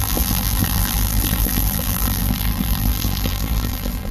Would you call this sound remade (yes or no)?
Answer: yes